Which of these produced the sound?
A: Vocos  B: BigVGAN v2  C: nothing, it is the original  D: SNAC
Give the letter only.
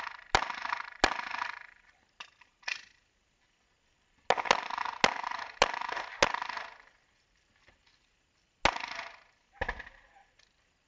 C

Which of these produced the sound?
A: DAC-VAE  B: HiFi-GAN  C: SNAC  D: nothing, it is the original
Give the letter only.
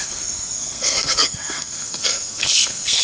C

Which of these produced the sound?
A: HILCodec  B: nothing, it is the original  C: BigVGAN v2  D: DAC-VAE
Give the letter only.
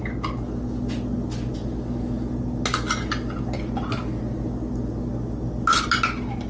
B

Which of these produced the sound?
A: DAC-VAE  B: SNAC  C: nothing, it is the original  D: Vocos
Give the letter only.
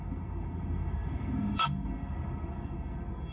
B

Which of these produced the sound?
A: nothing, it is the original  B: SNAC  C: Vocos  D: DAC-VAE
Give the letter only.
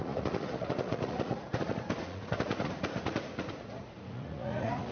C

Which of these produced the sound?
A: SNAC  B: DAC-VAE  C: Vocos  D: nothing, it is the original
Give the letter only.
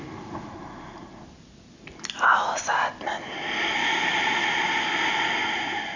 D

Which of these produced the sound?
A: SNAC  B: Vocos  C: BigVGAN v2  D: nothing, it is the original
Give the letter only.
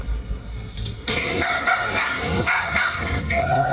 A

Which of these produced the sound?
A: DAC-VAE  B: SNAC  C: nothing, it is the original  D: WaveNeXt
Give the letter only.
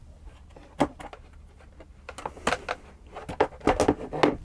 C